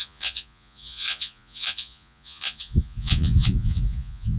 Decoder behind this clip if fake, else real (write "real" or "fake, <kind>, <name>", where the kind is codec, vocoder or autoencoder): fake, vocoder, Vocos